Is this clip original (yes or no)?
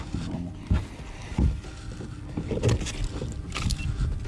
yes